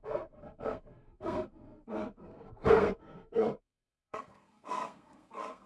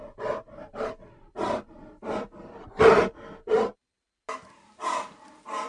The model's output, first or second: first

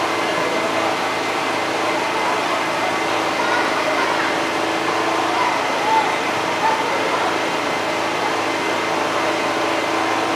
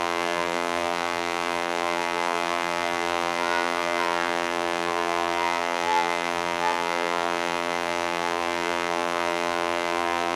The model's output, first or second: second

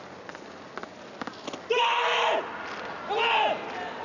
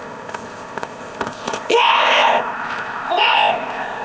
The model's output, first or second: second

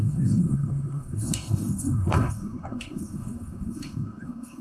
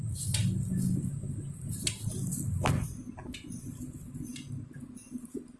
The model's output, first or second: first